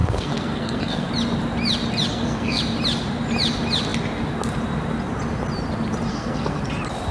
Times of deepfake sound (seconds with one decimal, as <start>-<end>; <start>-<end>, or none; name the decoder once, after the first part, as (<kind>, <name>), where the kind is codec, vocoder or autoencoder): 0.0-1.1 (codec, SNAC); 2.1-2.6; 6.1-6.6